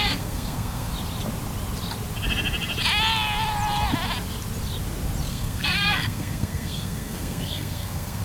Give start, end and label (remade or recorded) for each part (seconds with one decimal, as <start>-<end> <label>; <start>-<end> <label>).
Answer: 0.0-0.9 remade; 0.9-5.3 recorded; 5.3-8.2 remade